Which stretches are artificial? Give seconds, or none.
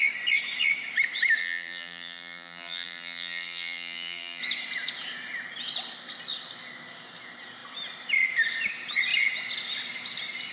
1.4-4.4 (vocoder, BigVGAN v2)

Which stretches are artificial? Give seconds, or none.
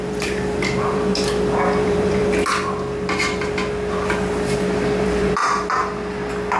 0.0-1.1 (vocoder, BigVGAN v2); 1.8-2.2; 5.0-5.4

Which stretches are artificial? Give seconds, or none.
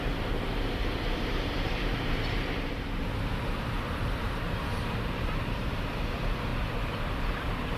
0.0-7.8 (vocoder, BigVGAN v2)